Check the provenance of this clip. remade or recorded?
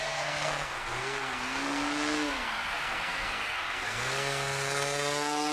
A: remade